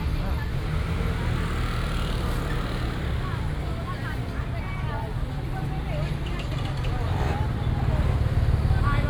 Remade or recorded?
recorded